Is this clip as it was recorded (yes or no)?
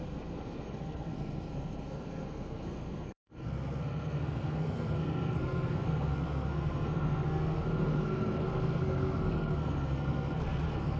no